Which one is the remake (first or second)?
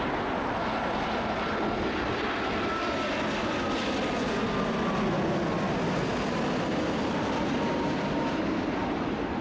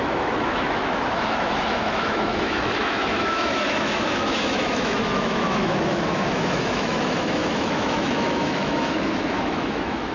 second